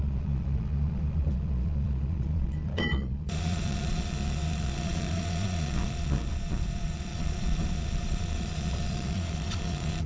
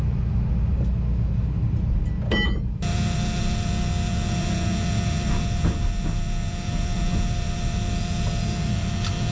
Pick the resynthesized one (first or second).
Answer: first